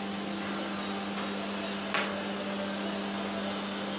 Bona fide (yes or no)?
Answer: yes